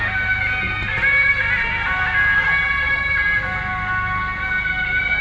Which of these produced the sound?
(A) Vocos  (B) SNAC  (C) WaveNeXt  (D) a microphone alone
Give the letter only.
D